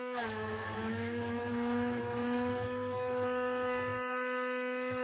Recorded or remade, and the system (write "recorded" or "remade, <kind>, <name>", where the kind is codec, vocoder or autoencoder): remade, autoencoder, DAC-VAE